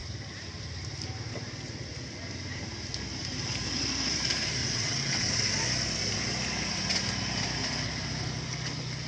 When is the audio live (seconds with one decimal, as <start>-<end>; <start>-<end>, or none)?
0.0-4.6; 5.3-9.1